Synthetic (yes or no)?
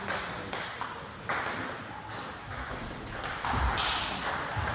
yes